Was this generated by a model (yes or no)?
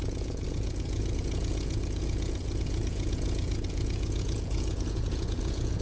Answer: yes